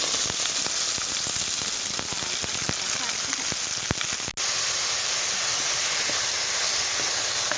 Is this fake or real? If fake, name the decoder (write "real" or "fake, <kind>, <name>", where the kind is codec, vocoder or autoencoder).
real